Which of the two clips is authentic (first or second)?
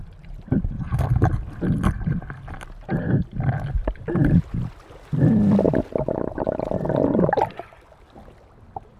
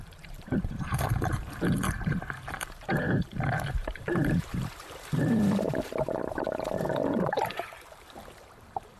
first